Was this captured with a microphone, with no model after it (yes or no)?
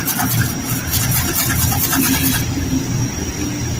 no